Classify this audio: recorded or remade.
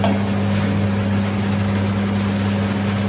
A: recorded